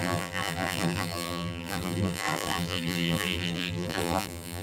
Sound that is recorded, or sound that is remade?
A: remade